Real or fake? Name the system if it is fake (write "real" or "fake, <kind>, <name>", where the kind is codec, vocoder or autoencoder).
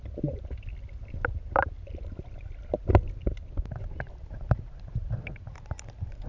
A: real